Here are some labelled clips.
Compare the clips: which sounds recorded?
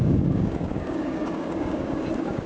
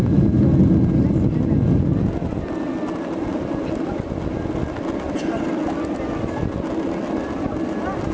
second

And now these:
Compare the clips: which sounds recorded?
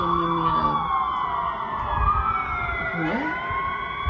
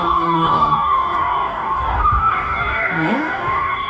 first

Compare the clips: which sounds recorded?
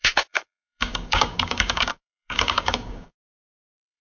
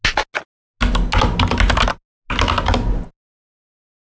second